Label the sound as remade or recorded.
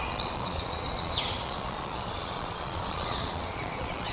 remade